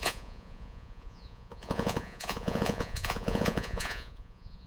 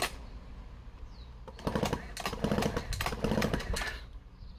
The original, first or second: second